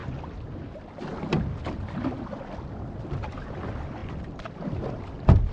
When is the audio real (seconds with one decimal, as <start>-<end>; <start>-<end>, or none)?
0.0-5.5